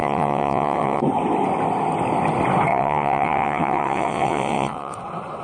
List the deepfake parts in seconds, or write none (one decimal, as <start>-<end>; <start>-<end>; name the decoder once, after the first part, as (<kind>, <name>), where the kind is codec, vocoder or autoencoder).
0.0-1.0 (vocoder, WaveNeXt); 2.7-5.0